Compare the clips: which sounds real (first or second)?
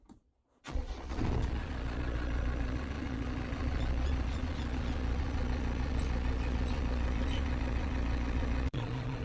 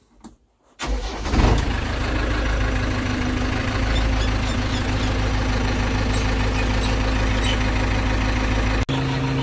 second